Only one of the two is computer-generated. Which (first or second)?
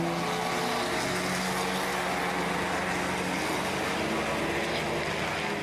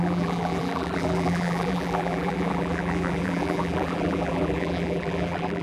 second